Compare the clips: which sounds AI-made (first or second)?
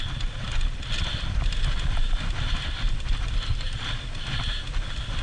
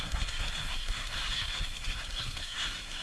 second